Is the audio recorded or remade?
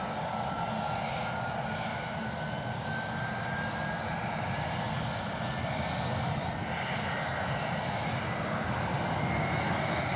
recorded